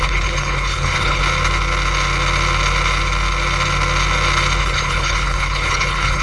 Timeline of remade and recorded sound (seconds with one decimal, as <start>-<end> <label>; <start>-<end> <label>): 0.0-1.2 remade; 1.2-4.6 recorded; 4.6-6.2 remade